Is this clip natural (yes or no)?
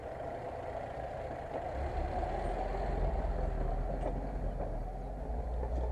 yes